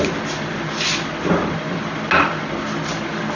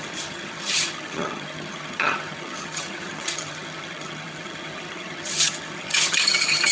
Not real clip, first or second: second